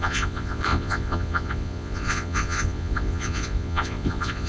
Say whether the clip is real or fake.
fake